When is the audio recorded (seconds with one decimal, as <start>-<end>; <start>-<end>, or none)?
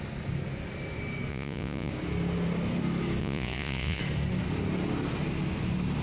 0.0-1.3; 1.9-3.2; 4.0-6.0